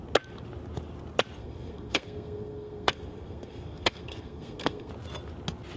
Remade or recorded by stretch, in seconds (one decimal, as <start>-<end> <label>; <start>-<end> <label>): 0.0-1.4 recorded; 1.4-4.9 remade; 4.9-5.8 recorded